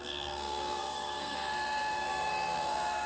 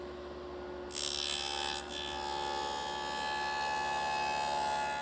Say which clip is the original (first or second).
second